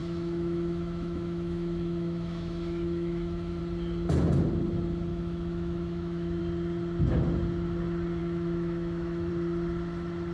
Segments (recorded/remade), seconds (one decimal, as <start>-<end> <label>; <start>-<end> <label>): 0.0-3.6 remade; 3.6-5.1 recorded; 5.1-6.4 remade; 6.4-8.2 recorded; 8.2-9.3 remade; 9.3-10.3 recorded

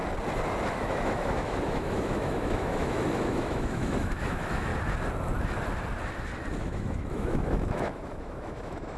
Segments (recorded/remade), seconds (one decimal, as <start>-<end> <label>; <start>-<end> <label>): 0.0-0.7 recorded; 0.7-4.7 remade; 4.7-6.6 recorded; 6.6-9.0 remade

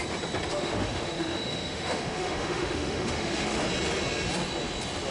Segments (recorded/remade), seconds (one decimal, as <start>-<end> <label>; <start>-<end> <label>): 0.0-0.5 recorded; 0.5-3.6 remade; 3.6-5.1 recorded

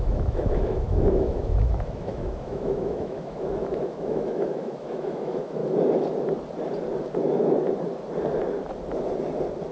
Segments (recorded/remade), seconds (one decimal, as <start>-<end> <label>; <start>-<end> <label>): 0.0-5.6 remade; 5.6-9.7 recorded

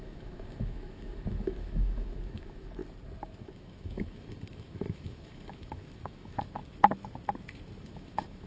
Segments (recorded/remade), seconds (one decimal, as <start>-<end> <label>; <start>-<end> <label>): 0.0-2.8 remade; 2.8-3.4 recorded; 3.4-6.6 remade; 6.6-7.8 recorded; 7.8-8.5 remade

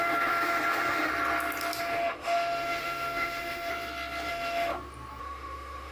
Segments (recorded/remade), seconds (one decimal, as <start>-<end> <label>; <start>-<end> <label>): 0.0-1.1 remade; 1.1-1.8 recorded; 1.8-3.7 remade; 3.7-4.3 recorded; 4.3-4.7 remade; 4.7-5.2 recorded; 5.2-5.9 remade

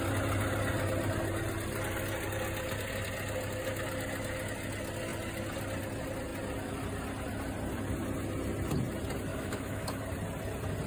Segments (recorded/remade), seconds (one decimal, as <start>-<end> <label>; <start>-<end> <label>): 0.0-9.3 recorded; 9.3-10.0 remade; 10.0-10.9 recorded